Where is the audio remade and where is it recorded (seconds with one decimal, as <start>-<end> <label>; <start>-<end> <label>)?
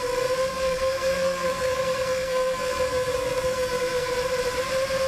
0.0-4.1 remade; 4.1-5.1 recorded